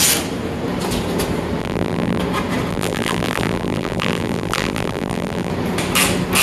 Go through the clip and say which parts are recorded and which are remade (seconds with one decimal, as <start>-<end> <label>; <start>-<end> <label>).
0.0-1.6 recorded; 1.6-2.2 remade; 2.2-2.7 recorded; 2.7-5.5 remade; 5.5-6.4 recorded